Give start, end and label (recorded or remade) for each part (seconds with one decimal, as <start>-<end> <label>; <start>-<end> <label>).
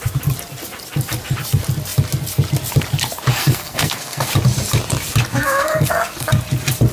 0.0-3.3 recorded; 3.3-4.3 remade; 4.3-5.3 recorded; 5.3-6.3 remade; 6.3-6.9 recorded